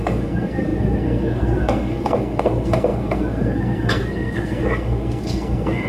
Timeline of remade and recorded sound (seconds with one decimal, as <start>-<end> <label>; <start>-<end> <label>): 0.0-5.9 remade